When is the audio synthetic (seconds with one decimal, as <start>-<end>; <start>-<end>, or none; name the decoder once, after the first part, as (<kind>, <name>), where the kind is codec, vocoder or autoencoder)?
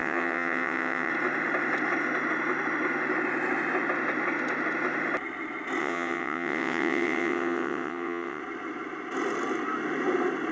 0.0-1.1 (vocoder, WaveNeXt); 5.8-8.4